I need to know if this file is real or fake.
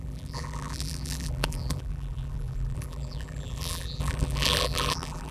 fake